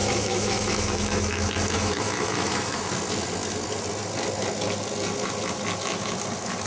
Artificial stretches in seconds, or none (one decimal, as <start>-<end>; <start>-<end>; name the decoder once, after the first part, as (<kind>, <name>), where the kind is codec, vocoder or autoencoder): 0.0-2.8 (autoencoder, DAC-VAE)